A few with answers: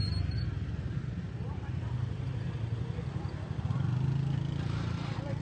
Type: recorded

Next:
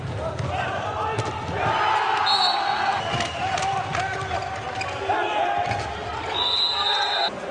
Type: recorded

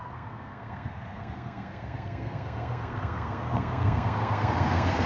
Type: remade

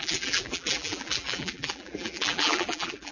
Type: remade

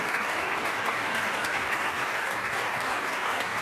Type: remade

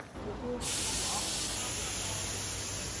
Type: recorded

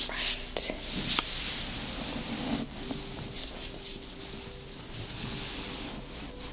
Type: recorded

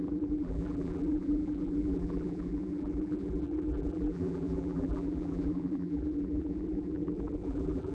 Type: remade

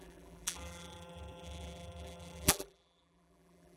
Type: remade